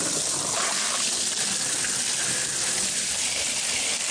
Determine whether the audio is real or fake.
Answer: real